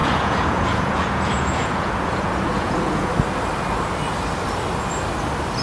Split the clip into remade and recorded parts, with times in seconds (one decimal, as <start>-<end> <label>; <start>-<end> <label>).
0.0-3.1 remade; 3.1-5.6 recorded